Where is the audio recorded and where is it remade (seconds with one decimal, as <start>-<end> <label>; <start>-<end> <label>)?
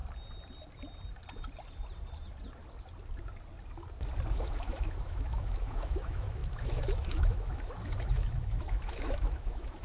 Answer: 0.0-4.3 recorded; 4.3-9.8 remade